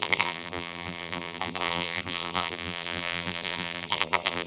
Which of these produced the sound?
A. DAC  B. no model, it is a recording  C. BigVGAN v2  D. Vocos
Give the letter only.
C